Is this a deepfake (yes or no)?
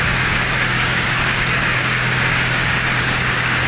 yes